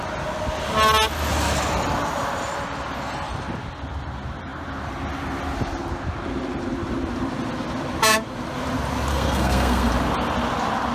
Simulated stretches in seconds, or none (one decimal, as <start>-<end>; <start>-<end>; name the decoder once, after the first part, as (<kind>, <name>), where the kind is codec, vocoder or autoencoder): 9.1-9.9 (codec, SNAC)